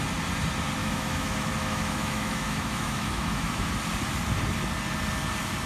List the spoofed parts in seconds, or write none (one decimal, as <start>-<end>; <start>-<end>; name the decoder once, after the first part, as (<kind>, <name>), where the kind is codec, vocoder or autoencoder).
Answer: 0.8-3.7 (autoencoder, DAC-VAE)